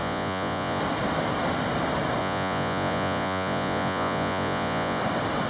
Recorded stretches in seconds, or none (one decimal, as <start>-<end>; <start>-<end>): 0.8-2.2; 5.0-5.5